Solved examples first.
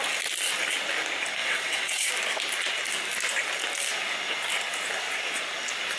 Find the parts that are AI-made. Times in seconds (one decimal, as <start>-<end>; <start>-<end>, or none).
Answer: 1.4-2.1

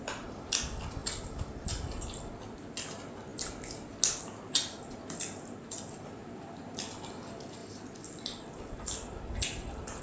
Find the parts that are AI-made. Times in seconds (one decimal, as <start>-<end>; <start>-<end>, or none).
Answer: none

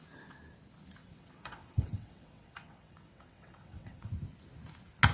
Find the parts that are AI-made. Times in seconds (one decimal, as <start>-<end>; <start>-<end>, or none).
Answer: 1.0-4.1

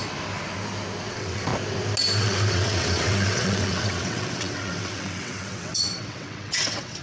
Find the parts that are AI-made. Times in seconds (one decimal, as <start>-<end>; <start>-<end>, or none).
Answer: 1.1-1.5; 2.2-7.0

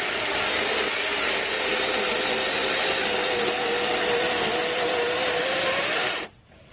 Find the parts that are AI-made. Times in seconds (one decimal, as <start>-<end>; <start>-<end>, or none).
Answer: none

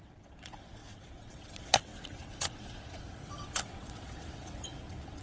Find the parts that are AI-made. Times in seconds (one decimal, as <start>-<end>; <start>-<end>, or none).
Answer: 0.0-5.2